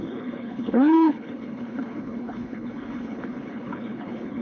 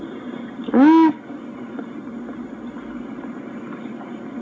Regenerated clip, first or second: first